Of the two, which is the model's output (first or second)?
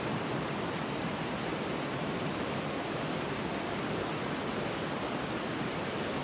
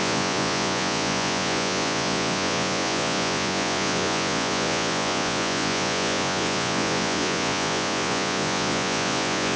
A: second